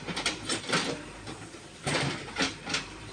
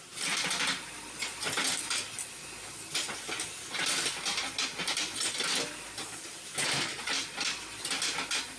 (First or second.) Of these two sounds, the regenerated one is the first